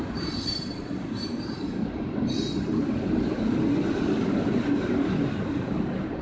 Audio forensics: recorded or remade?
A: recorded